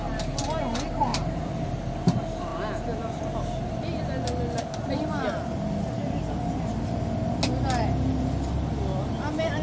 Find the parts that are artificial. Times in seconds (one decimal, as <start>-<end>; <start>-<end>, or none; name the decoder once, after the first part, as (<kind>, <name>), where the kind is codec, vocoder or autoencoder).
1.1-1.7 (vocoder, BigVGAN v2)